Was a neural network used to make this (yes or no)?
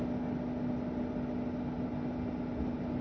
no